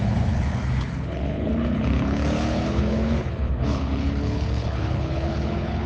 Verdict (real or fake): fake